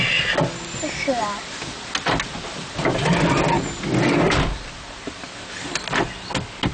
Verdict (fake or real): real